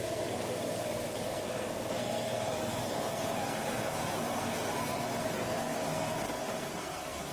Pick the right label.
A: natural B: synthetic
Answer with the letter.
B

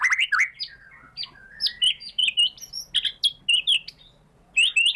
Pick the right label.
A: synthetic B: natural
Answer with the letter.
B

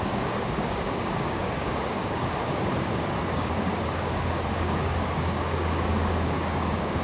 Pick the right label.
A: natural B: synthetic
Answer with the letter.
B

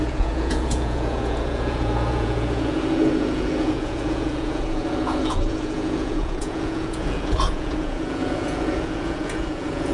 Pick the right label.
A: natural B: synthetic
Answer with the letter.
B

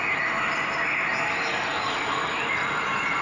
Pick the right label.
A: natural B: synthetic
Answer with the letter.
A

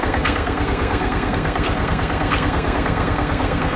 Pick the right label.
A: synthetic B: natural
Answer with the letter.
A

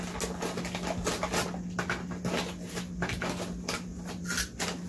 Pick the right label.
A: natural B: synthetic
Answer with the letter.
A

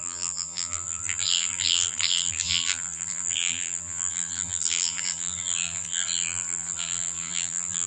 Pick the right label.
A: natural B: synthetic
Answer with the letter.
B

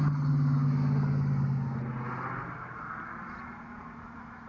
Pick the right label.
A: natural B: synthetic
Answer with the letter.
A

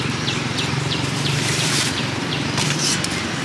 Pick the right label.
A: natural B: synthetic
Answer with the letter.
B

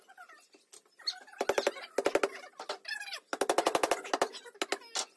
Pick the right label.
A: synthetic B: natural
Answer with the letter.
B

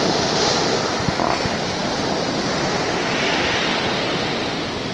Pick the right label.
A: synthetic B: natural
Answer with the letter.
B